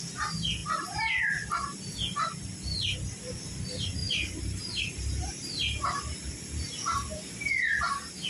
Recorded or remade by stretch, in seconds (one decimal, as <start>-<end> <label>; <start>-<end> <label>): 0.0-4.0 recorded; 4.0-7.8 remade; 7.8-8.3 recorded